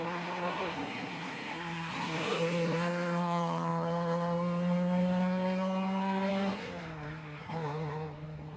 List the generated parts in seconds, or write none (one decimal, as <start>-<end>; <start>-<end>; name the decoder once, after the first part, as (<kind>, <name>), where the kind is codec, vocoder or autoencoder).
0.0-8.6 (codec, SNAC)